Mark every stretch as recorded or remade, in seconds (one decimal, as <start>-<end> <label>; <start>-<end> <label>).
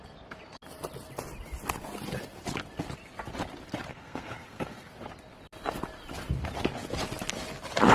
0.0-3.9 recorded; 3.9-4.9 remade; 4.9-7.9 recorded